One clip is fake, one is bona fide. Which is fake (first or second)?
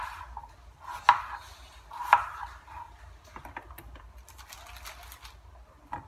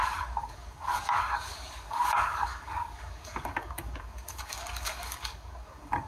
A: second